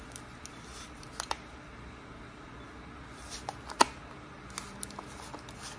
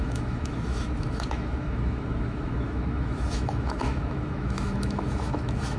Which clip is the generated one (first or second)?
second